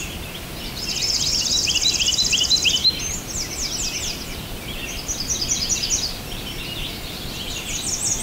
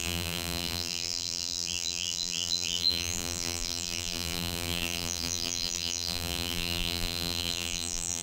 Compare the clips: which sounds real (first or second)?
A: first